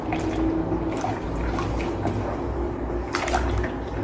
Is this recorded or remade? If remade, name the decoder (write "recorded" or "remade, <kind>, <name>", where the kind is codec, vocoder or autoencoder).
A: recorded